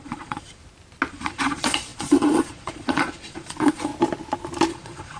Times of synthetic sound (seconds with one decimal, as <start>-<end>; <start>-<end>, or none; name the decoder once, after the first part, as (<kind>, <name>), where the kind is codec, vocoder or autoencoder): 0.0-0.6 (vocoder, Vocos); 1.1-3.9; 4.7-5.2